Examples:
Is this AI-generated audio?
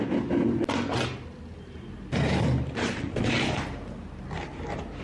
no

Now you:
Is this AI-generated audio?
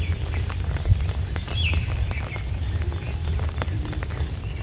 yes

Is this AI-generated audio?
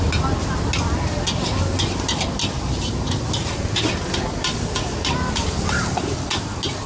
no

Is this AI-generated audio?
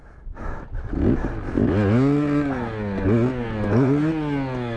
no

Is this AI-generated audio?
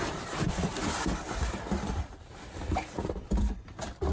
yes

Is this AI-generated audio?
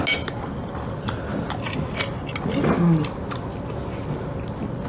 no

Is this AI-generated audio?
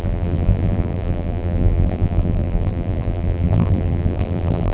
yes